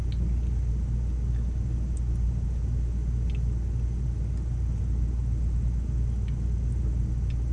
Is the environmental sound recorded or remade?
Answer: recorded